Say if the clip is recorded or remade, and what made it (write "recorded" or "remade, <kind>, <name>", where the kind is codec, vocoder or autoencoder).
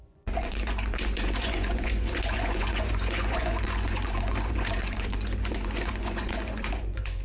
remade, vocoder, Vocos